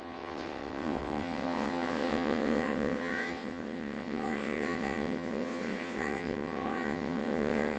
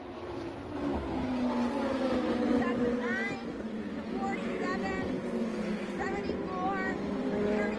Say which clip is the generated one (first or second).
first